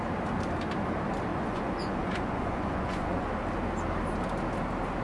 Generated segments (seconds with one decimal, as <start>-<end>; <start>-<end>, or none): 1.3-3.3

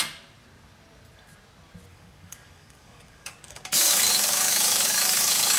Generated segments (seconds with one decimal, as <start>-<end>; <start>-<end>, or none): 1.9-5.6

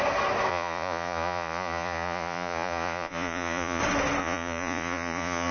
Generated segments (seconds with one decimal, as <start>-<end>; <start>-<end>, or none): 0.5-3.8; 4.2-5.5

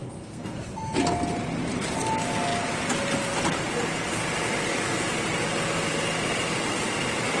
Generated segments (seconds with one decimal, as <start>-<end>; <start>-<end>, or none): 0.0-0.6

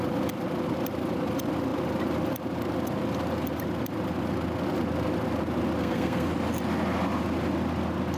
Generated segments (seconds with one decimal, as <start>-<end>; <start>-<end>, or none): 5.8-6.3

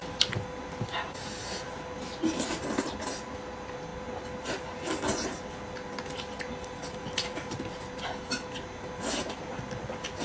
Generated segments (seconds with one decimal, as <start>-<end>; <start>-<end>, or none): none